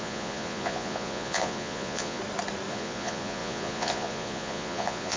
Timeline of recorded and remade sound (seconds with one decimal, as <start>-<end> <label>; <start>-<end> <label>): 0.0-2.2 remade; 2.2-2.7 recorded; 2.7-5.2 remade